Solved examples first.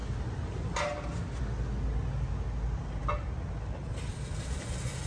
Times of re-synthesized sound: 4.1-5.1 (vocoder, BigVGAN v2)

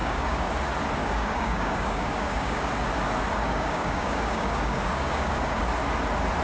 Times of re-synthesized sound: 0.0-0.5 (codec, DAC); 1.0-2.7; 3.4-5.6

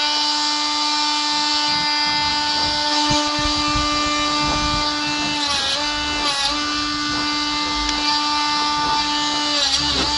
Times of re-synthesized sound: none

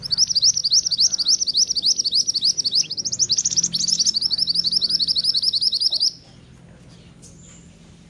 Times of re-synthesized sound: none

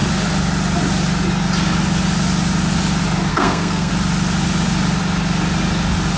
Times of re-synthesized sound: 3.3-3.9 (codec, SNAC)